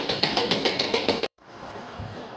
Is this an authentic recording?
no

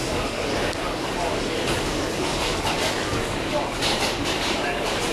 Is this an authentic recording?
no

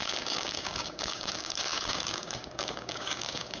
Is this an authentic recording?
no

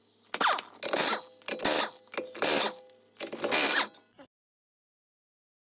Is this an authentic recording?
yes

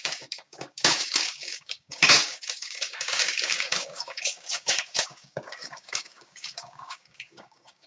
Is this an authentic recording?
no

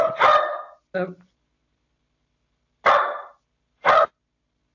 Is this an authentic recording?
yes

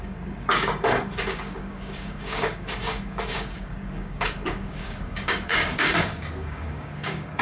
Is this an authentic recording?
no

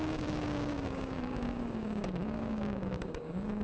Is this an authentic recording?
no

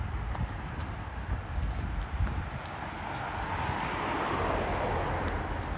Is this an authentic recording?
yes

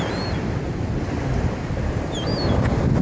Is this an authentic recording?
yes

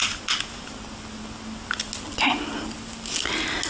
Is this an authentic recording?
yes